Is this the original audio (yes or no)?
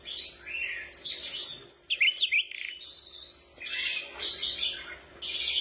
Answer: yes